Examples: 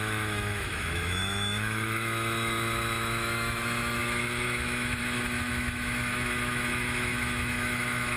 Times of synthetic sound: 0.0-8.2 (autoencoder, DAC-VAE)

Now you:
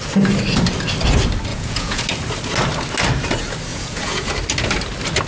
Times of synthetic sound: 1.5-2.0 (vocoder, Vocos); 3.7-4.3